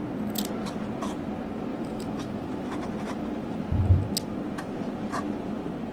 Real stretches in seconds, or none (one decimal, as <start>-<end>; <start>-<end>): 0.0-1.7; 4.0-5.9

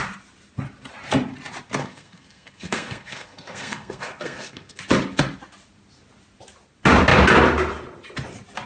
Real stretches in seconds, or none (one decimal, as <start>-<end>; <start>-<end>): 0.0-1.8; 4.8-8.7

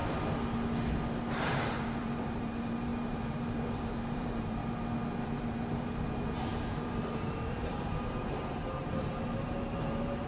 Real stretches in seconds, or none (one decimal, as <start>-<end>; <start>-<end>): 0.0-1.3; 4.6-5.2

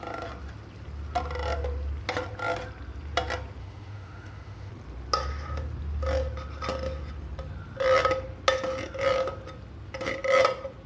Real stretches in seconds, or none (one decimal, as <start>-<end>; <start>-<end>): 0.0-3.6; 4.7-10.9

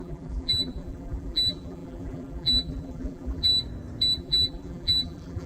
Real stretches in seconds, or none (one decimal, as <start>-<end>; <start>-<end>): 3.5-4.2